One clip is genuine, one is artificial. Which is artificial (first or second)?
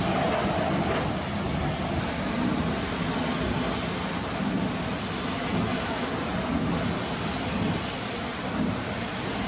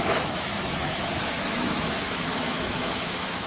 second